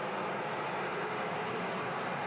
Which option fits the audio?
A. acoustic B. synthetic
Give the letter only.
A